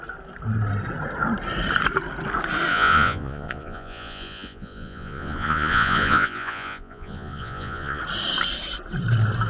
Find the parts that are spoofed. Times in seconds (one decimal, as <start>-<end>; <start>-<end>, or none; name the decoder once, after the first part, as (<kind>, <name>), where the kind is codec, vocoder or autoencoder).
2.7-8.0 (vocoder, Vocos)